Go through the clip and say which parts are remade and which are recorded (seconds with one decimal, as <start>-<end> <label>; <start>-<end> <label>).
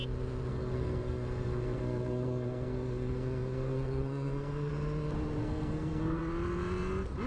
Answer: 0.0-0.5 recorded; 0.5-4.7 remade; 4.7-5.4 recorded; 5.4-6.2 remade; 6.2-7.3 recorded